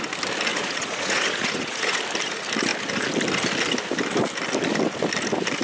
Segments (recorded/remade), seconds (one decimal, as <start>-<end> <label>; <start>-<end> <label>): 0.0-0.5 recorded; 0.5-2.0 remade; 2.0-5.6 recorded